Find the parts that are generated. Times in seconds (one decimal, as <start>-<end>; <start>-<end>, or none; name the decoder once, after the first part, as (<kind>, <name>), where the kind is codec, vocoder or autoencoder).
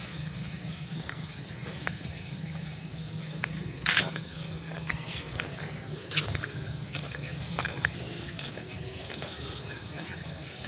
0.0-10.7 (codec, SNAC)